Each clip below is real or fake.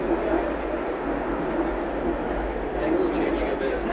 real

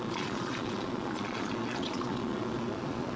fake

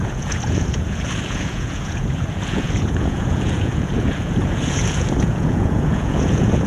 fake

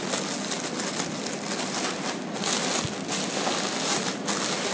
real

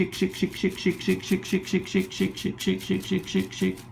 real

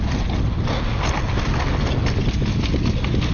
real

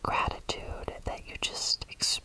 fake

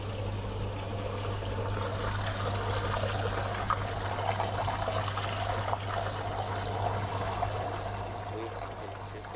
real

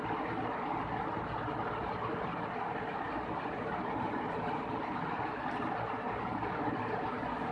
real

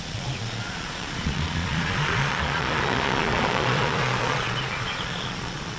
fake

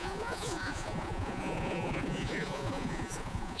fake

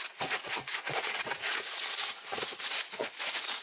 fake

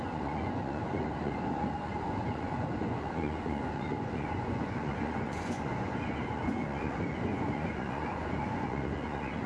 fake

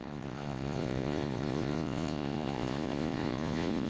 fake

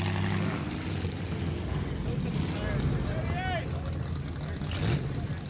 real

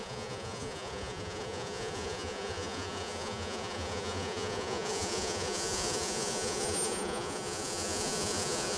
fake